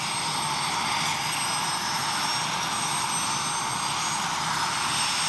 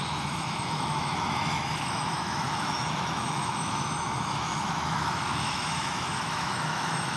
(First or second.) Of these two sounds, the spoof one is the second